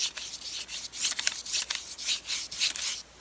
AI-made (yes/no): no